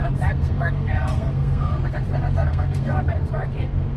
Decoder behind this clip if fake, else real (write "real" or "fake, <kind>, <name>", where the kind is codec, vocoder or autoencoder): fake, codec, SNAC